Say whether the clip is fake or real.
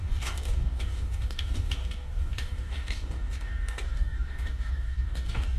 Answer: fake